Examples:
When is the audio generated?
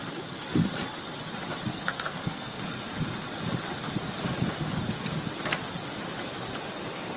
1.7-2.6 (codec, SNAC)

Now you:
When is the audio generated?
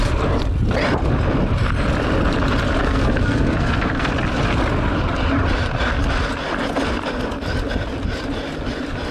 2.8-4.1 (codec, SNAC)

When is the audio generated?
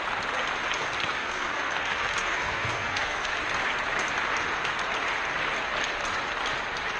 1.2-3.3 (codec, SNAC)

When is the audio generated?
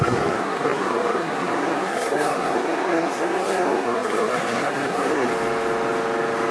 0.0-5.3 (codec, SNAC)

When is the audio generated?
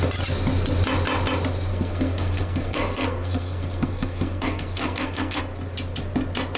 1.7-5.4 (codec, SNAC)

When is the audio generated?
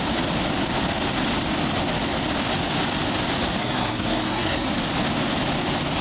3.6-4.7 (codec, SNAC)